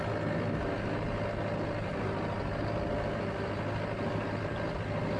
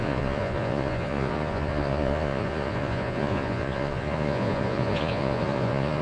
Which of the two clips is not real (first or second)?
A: second